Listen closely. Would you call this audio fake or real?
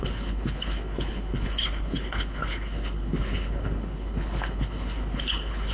fake